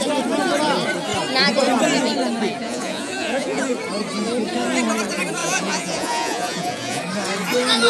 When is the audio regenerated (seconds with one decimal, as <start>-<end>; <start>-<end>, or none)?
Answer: 2.6-3.6; 5.4-7.0